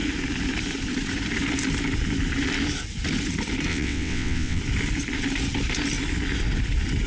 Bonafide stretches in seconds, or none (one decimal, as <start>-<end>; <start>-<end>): 0.0-3.7; 4.6-7.1